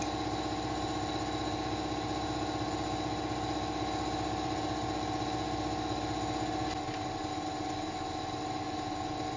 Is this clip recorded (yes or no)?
yes